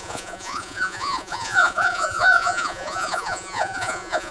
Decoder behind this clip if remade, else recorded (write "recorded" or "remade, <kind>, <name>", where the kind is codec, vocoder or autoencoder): remade, vocoder, Vocos